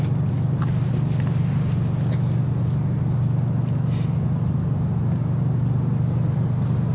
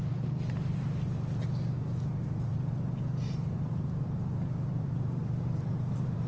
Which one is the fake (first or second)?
second